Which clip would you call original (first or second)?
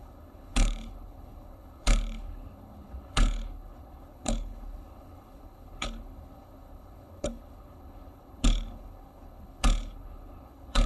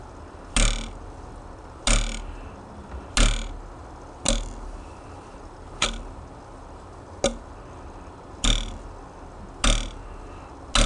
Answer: second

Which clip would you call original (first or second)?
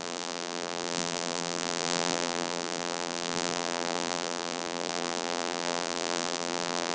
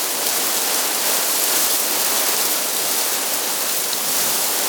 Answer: second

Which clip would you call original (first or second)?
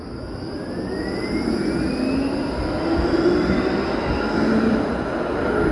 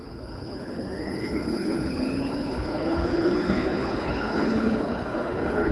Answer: first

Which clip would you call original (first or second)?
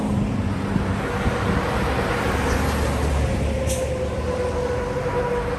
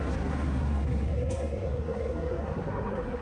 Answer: first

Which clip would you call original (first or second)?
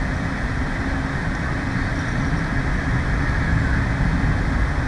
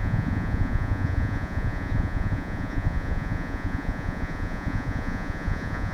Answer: first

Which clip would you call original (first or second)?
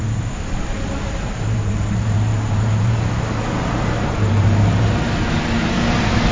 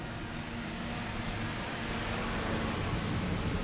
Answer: second